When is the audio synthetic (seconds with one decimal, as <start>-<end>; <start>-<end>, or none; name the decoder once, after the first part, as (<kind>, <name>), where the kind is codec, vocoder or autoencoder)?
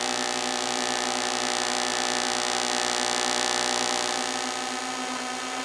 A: none